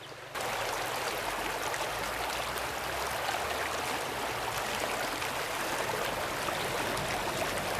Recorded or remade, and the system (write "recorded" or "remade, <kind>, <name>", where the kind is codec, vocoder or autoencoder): recorded